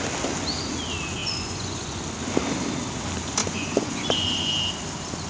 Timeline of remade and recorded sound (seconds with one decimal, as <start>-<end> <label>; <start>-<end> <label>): 0.0-1.2 recorded; 1.2-2.0 remade; 2.0-3.4 recorded; 3.4-4.5 remade; 4.5-5.3 recorded